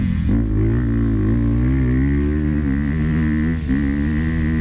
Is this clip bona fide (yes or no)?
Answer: yes